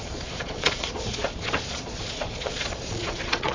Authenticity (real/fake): fake